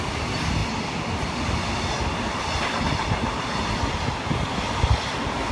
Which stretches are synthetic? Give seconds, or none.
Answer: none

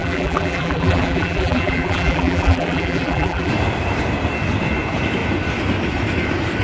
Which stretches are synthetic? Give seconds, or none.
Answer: 0.0-3.5 (vocoder, BigVGAN v2)

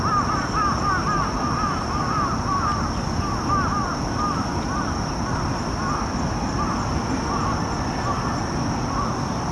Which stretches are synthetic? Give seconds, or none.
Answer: none

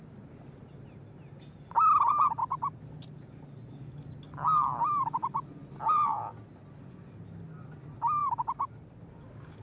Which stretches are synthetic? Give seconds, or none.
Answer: 2.4-3.8 (vocoder, BigVGAN v2); 8.2-9.1